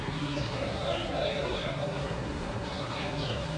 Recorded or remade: remade